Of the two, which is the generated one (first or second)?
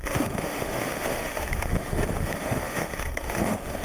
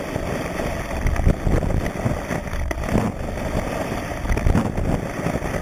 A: first